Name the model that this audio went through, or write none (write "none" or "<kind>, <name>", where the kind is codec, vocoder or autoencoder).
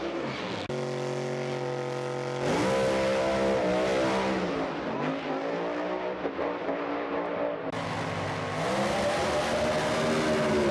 none